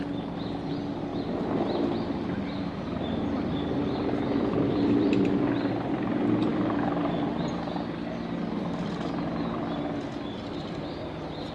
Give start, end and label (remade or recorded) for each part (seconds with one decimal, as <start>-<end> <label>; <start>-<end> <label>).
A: 0.0-6.5 recorded; 6.5-7.0 remade; 7.0-11.5 recorded